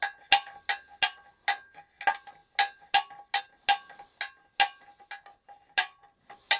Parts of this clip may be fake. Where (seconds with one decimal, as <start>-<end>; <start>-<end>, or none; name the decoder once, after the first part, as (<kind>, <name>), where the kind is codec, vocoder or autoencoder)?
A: none